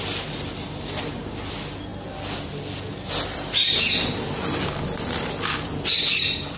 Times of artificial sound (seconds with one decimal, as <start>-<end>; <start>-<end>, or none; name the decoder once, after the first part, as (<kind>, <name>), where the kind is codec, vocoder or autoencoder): none